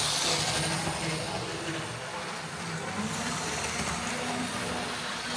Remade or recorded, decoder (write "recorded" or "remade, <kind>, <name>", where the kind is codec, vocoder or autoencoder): recorded